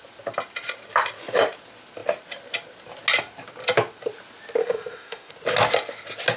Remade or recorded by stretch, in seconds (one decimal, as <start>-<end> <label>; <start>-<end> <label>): 0.0-4.6 recorded; 4.6-5.3 remade; 5.3-6.4 recorded